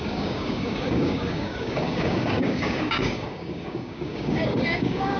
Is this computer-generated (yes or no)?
yes